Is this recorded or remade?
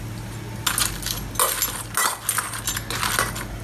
recorded